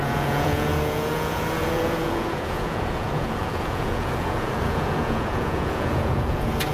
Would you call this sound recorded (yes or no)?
no